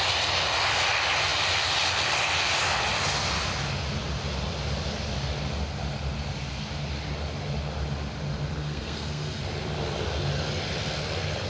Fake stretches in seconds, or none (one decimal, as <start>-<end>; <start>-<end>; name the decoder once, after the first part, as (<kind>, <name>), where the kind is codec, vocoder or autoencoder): 8.6-9.4 (codec, SNAC)